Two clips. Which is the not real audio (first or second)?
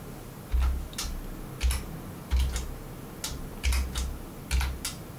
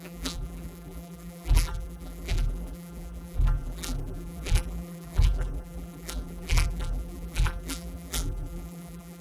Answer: second